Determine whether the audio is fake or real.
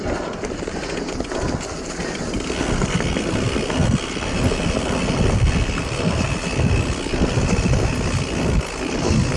real